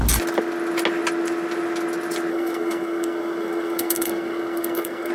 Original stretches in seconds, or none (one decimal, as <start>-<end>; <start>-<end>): 0.0-2.3